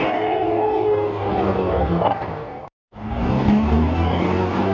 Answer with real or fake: fake